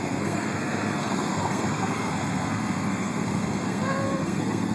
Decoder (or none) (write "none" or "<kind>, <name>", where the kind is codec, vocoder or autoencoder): codec, SNAC